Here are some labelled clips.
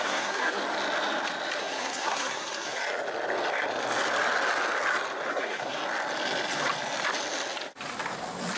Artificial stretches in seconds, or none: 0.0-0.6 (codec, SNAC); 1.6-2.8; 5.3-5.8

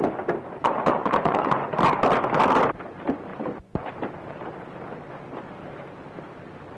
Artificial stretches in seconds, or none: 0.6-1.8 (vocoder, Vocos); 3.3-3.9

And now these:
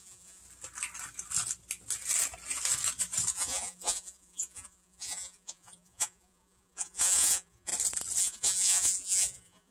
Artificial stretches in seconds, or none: 0.0-0.4 (vocoder, Vocos); 3.3-7.7; 8.2-9.7

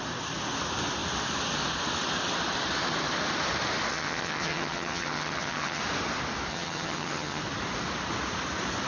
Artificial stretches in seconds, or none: 3.9-5.8 (vocoder, HiFi-GAN); 6.5-7.4

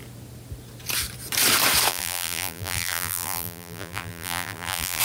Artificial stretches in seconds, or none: 1.9-5.0 (vocoder, BigVGAN v2)

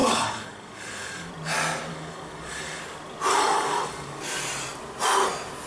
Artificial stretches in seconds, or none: 0.0-1.3 (codec, DAC); 1.9-2.8; 3.3-4.2

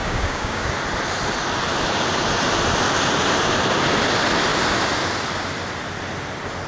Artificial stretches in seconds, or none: 0.0-0.7 (codec, DAC)

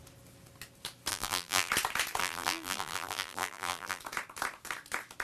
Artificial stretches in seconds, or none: 1.1-1.7 (vocoder, BigVGAN v2); 2.2-4.0